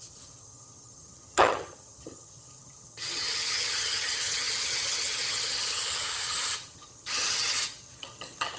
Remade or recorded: remade